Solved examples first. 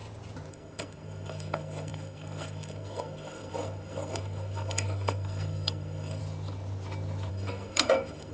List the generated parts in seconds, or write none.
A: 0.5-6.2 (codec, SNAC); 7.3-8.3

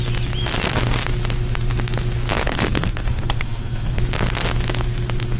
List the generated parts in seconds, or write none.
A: 2.3-4.0 (codec, SNAC)

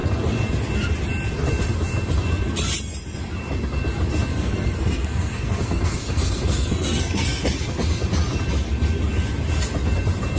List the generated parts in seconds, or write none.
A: 4.3-7.4 (codec, SNAC)

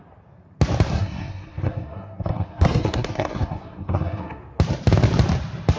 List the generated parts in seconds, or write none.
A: 0.9-4.4 (codec, SNAC)

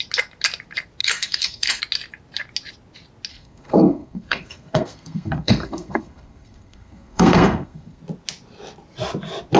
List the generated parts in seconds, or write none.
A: 1.0-1.8 (codec, SNAC); 3.3-8.0

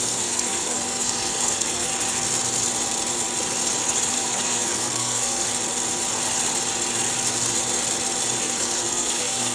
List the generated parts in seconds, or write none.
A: 0.0-1.9 (codec, SNAC); 4.1-5.5; 8.4-9.5

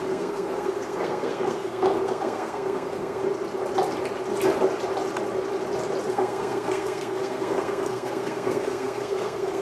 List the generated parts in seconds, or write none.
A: 0.0-3.2 (codec, SNAC); 6.1-9.6

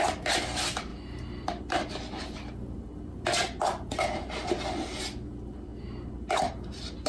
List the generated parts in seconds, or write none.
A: none